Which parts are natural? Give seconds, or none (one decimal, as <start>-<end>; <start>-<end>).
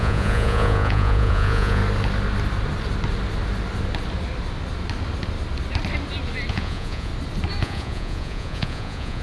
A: 1.8-6.5; 7.1-7.6